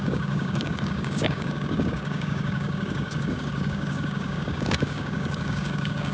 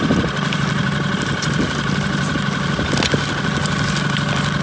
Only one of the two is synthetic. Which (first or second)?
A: first